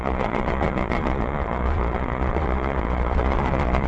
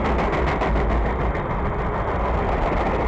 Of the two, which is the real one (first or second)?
second